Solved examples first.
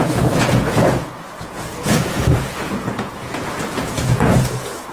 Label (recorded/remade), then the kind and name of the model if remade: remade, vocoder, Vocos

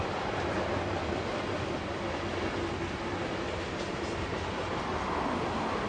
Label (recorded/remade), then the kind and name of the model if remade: recorded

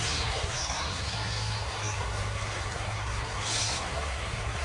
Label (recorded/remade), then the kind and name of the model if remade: remade, codec, SNAC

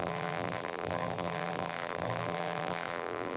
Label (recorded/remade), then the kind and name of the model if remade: remade, vocoder, BigVGAN v2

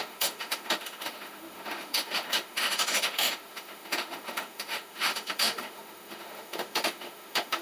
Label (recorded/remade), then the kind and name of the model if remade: remade, autoencoder, DAC-VAE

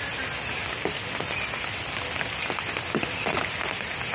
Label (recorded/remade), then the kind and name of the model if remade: recorded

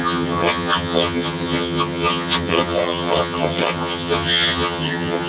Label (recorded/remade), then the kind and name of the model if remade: remade, vocoder, HiFi-GAN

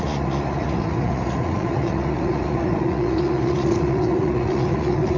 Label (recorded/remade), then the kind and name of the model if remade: remade, vocoder, Vocos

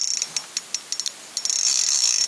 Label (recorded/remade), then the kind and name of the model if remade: recorded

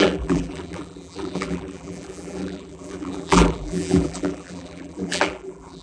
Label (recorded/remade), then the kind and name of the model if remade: remade, vocoder, BigVGAN v2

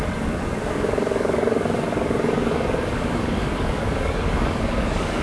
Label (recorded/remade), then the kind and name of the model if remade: remade, codec, DAC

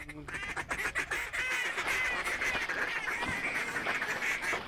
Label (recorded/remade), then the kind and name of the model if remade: recorded